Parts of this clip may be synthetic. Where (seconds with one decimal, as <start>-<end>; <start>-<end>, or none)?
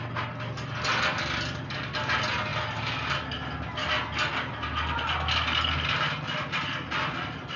none